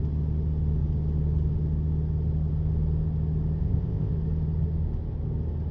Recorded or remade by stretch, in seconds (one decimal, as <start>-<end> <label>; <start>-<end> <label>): 0.0-3.6 recorded; 3.6-4.1 remade; 4.1-5.7 recorded